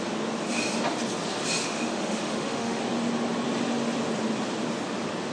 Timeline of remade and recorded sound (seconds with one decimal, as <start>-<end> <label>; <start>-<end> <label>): 0.0-1.6 recorded; 1.6-2.8 remade; 2.8-5.3 recorded